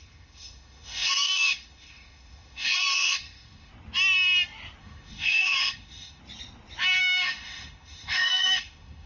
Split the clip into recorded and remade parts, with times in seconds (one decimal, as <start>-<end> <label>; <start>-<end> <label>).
0.0-3.7 remade; 3.7-4.8 recorded; 4.8-6.2 remade; 6.2-7.0 recorded; 7.0-9.1 remade